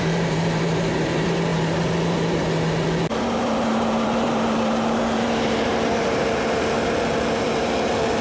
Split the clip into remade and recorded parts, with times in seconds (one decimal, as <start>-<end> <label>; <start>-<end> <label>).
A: 0.0-8.2 remade